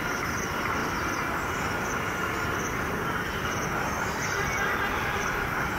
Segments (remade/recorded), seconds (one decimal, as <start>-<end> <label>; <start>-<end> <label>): 0.0-5.8 recorded